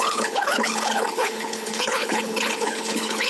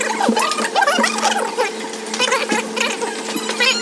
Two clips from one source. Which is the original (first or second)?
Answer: second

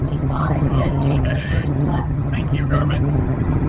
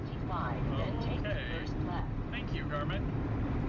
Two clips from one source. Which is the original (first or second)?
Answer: second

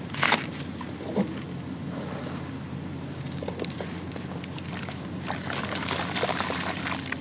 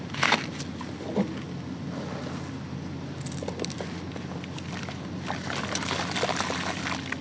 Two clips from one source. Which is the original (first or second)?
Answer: second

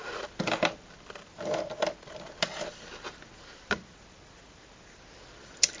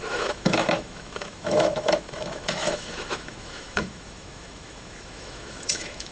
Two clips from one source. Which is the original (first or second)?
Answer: first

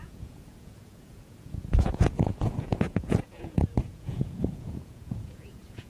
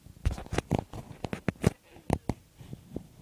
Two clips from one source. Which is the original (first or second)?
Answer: second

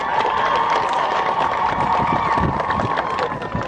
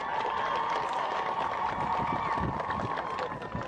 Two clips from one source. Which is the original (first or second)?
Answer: second